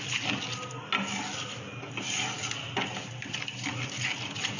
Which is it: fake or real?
real